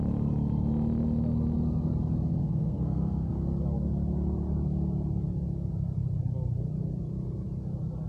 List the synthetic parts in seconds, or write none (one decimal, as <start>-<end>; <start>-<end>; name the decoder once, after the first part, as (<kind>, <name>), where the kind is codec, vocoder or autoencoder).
2.4-3.3 (codec, SNAC)